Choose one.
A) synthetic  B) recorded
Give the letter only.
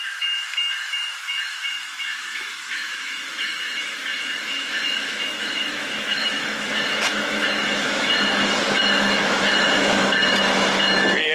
A